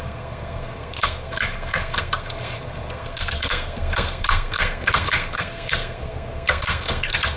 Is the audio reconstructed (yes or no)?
yes